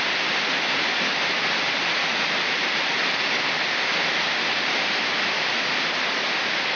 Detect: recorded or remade recorded